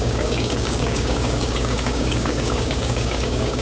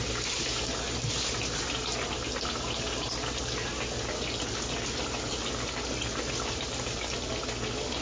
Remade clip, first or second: first